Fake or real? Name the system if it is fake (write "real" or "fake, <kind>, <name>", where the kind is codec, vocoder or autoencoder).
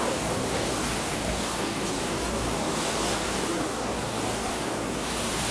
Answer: fake, codec, DAC